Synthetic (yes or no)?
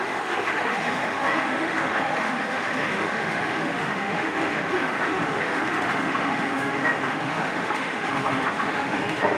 yes